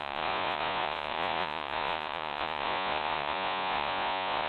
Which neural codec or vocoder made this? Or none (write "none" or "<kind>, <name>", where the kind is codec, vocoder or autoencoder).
vocoder, Vocos